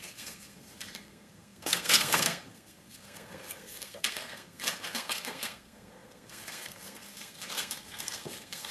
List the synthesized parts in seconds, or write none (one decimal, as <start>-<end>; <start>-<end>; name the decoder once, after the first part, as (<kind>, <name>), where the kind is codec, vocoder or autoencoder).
0.0-8.7 (codec, SNAC)

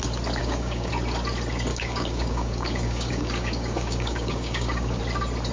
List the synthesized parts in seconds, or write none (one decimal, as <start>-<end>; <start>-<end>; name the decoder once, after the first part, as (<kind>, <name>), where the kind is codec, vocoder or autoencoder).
0.4-0.9 (codec, DAC); 1.7-5.0

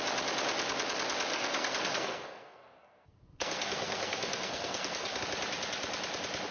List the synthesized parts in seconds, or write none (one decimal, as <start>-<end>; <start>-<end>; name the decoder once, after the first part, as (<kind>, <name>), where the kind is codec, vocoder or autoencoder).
1.3-5.2 (codec, SNAC)

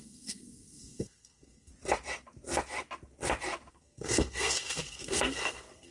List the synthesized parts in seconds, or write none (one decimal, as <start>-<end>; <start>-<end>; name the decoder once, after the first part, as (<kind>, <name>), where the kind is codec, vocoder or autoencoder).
0.0-1.7 (codec, SNAC); 3.7-5.9

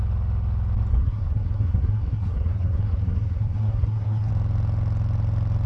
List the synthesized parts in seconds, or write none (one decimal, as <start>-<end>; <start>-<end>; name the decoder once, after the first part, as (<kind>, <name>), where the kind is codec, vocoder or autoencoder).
0.9-4.3 (codec, SNAC)

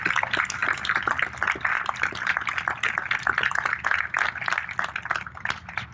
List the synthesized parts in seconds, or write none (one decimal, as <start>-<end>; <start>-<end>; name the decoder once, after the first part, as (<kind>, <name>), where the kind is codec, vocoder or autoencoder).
0.6-2.1 (vocoder, BigVGAN v2)

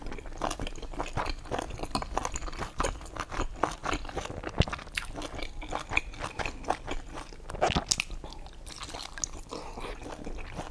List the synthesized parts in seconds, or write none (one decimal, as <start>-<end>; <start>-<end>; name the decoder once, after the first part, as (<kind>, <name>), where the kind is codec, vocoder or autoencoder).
none